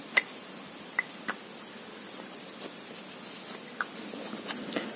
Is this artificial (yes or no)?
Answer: no